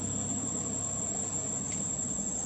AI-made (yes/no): no